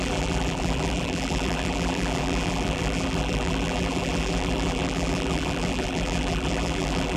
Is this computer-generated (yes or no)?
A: yes